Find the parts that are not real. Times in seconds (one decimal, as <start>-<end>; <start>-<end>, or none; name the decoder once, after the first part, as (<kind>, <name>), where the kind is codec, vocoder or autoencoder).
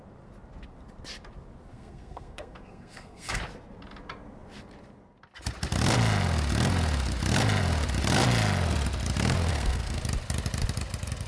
1.7-3.4 (codec, SNAC); 9.5-10.0